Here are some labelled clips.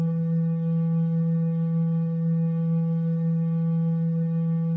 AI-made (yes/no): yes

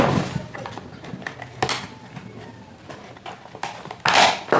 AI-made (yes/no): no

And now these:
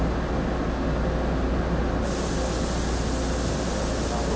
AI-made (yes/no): no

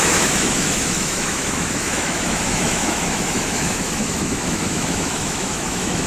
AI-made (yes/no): yes